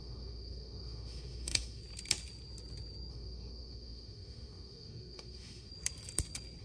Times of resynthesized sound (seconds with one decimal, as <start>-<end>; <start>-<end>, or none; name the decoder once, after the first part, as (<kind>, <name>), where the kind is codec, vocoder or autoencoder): 0.0-1.8 (autoencoder, DAC-VAE); 3.1-5.7